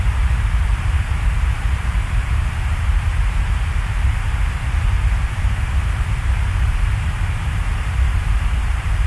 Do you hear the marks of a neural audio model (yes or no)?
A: yes